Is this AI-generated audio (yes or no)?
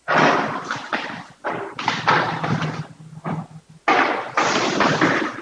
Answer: no